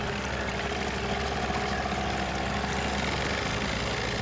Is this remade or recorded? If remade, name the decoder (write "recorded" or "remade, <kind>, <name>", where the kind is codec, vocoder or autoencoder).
recorded